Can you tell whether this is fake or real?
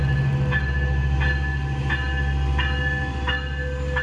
real